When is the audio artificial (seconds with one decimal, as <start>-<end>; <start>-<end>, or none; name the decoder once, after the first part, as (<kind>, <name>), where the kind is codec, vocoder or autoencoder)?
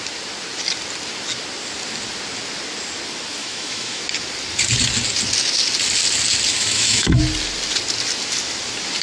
3.4-4.0 (autoencoder, DAC-VAE); 6.5-7.2